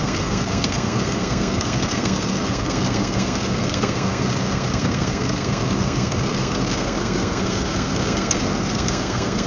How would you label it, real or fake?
fake